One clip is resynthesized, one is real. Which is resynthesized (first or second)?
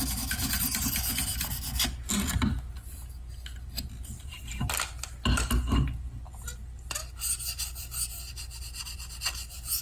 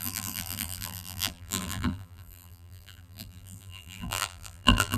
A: second